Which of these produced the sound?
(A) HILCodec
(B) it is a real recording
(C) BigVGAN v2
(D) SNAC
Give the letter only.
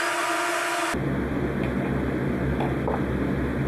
B